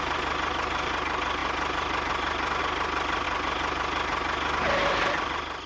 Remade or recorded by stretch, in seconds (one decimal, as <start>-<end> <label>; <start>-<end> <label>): 0.0-5.7 recorded